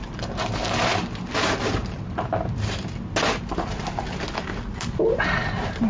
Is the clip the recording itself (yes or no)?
yes